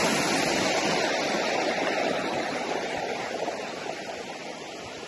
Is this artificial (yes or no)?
no